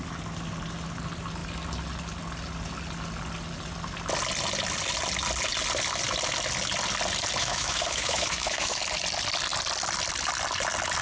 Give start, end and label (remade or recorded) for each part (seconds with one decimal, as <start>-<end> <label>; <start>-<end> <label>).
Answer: 0.0-7.4 recorded; 7.4-8.8 remade; 8.8-11.0 recorded